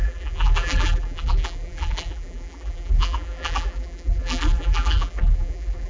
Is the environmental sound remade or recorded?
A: remade